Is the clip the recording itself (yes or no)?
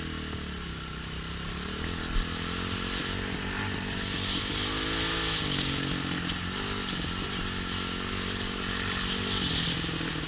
yes